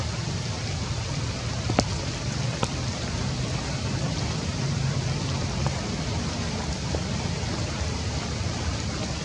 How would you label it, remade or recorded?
remade